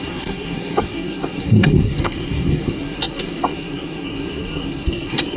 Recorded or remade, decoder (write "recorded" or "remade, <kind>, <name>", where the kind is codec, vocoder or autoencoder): remade, codec, SNAC